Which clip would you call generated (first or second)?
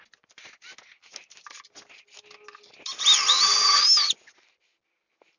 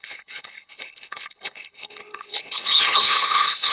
second